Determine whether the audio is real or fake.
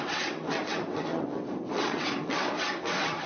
fake